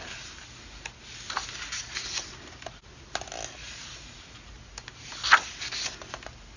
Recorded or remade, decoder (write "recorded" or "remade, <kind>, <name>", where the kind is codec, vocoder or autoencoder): recorded